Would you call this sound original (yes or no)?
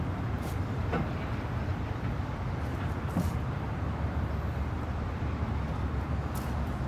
no